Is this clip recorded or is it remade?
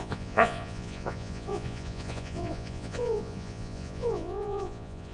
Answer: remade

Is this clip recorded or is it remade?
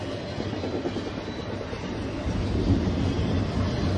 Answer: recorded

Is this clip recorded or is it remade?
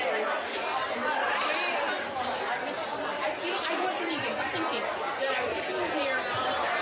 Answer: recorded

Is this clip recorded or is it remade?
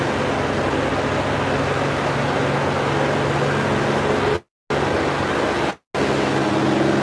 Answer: recorded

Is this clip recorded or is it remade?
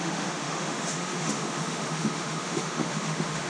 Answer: remade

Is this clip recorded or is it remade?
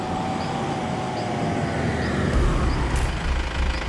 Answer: recorded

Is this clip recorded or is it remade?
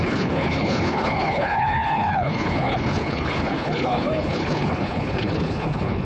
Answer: remade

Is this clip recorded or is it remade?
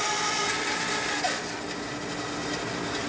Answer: recorded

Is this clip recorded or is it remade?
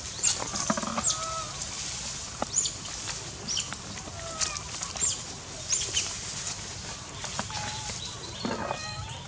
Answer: recorded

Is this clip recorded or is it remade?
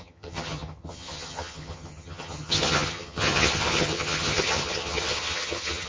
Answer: remade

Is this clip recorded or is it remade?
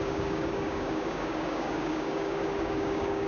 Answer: remade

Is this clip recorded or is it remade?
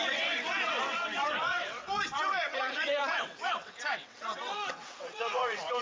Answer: remade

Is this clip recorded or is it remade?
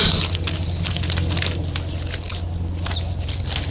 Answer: recorded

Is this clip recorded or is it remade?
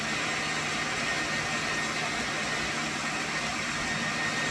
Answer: recorded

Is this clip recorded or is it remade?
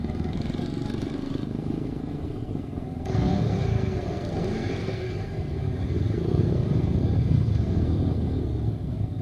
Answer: remade